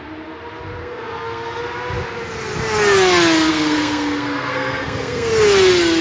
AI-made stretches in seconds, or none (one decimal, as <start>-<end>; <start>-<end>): 0.8-1.6; 3.5-5.3